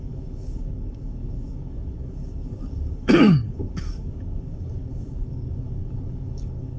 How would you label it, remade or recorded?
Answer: remade